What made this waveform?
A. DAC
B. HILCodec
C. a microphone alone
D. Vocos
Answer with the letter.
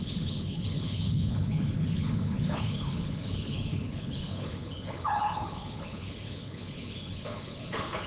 B